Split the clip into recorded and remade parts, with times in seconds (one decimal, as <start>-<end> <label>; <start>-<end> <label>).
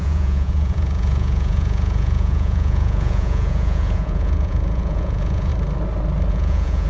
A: 0.0-5.5 remade; 5.5-6.3 recorded; 6.3-6.9 remade